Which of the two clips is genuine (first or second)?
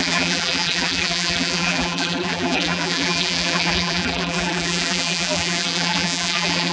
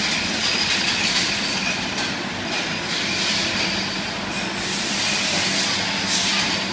second